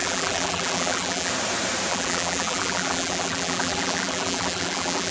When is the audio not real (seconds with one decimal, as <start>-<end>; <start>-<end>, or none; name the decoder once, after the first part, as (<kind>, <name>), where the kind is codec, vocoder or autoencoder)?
0.0-1.3 (vocoder, BigVGAN v2); 1.9-5.1